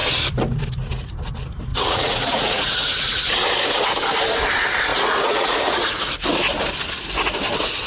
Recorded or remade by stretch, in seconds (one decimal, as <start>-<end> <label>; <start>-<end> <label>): 0.0-1.7 recorded; 1.7-3.3 remade; 3.3-4.9 recorded; 4.9-6.1 remade; 6.1-7.9 recorded

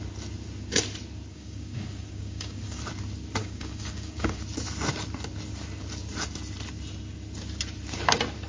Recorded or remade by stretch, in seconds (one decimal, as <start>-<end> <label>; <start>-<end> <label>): 0.0-1.3 recorded; 1.3-2.8 remade; 2.8-3.4 recorded; 3.4-4.4 remade; 4.4-8.5 recorded

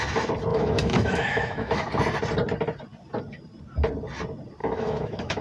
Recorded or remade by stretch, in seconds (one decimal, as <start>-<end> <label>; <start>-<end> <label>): 0.0-0.5 recorded; 0.5-1.9 remade; 1.9-4.6 recorded; 4.6-5.4 remade

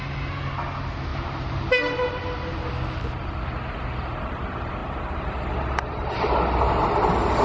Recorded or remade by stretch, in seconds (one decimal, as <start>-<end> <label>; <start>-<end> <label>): 0.0-1.1 recorded; 1.1-2.7 remade; 2.7-4.8 recorded; 4.8-5.3 remade; 5.3-7.4 recorded

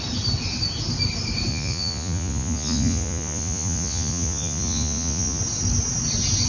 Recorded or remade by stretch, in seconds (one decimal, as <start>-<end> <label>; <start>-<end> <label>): 0.0-1.5 recorded; 1.5-5.4 remade; 5.4-6.5 recorded

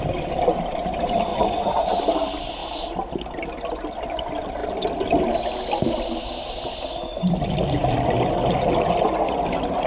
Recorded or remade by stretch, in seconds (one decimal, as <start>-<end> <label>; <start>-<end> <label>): 0.0-1.3 recorded; 1.3-2.0 remade; 2.0-9.9 recorded

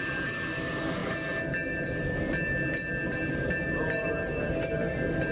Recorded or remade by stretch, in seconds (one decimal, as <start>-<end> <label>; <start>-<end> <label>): 0.0-5.3 recorded

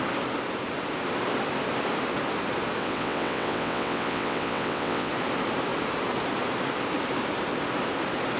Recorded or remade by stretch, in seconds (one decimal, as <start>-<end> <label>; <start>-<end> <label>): 0.0-2.8 recorded; 2.8-5.1 remade; 5.1-8.4 recorded